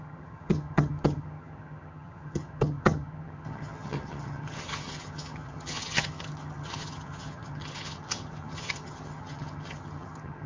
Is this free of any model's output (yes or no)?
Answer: no